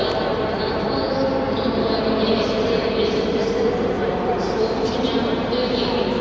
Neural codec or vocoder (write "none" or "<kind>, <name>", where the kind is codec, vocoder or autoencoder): none